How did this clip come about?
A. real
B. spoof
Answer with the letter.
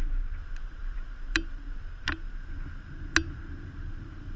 A